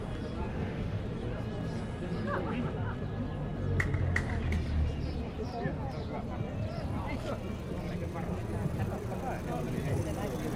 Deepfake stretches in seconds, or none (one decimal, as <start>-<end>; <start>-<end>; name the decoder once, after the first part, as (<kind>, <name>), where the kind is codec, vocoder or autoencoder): 0.5-1.0 (autoencoder, DAC-VAE)